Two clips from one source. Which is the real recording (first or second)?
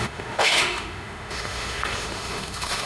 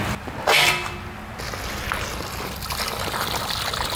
second